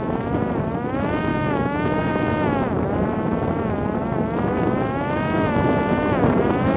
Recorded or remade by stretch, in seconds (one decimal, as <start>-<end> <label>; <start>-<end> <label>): 0.0-1.3 recorded; 1.3-2.1 remade; 2.1-6.8 recorded